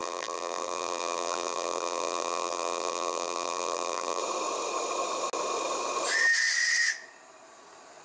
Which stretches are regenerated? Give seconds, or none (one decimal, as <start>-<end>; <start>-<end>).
0.0-4.2